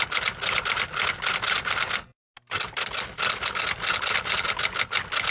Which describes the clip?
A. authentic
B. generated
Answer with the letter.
A